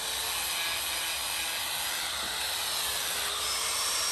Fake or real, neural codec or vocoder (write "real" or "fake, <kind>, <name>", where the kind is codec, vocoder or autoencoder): real